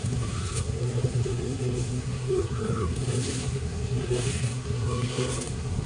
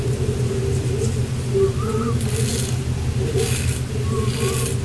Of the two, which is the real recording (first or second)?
second